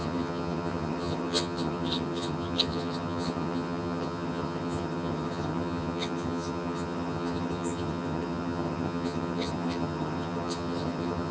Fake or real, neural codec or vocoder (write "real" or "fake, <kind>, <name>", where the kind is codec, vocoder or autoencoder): fake, vocoder, HiFi-GAN